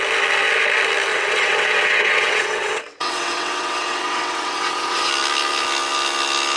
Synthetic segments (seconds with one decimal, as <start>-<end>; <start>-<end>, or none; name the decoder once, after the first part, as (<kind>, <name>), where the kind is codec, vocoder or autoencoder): 1.1-5.1 (vocoder, WaveNeXt)